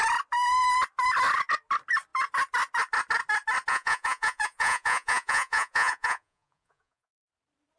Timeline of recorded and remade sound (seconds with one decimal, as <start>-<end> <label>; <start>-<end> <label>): 0.0-3.7 recorded; 3.7-7.3 remade; 7.3-7.8 recorded